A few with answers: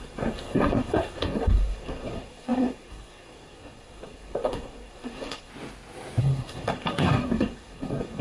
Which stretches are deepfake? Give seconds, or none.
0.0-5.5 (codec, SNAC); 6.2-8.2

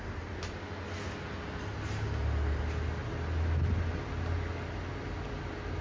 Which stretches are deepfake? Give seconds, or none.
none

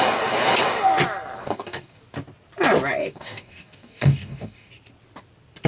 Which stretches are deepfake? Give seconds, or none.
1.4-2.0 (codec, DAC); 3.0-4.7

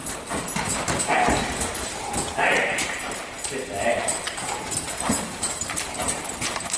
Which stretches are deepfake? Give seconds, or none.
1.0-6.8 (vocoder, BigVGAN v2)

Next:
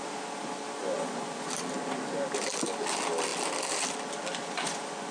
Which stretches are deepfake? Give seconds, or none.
0.8-1.5 (vocoder, Vocos); 4.4-5.1